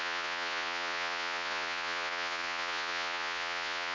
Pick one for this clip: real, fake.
fake